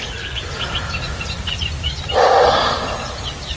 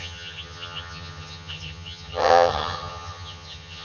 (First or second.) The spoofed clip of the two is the second